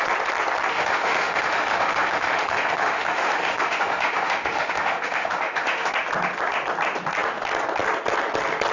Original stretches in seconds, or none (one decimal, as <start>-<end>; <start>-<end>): 0.0-0.7; 5.9-8.7